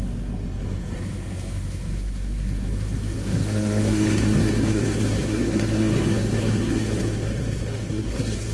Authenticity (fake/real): fake